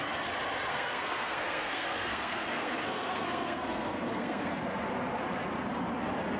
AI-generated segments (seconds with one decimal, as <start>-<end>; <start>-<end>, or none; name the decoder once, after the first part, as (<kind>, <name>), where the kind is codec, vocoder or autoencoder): 0.7-4.5 (codec, SNAC)